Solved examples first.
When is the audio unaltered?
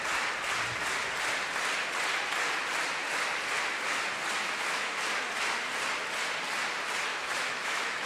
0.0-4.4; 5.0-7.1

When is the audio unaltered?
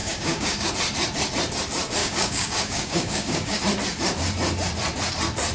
0.7-2.0; 3.6-5.5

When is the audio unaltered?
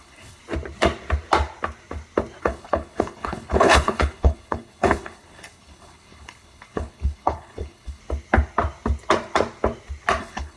0.4-2.4; 8.0-10.2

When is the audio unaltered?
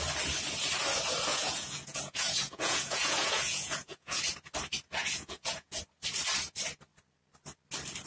0.0-1.3; 4.2-5.0; 5.8-8.1